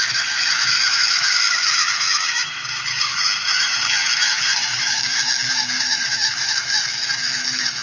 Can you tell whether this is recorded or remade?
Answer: remade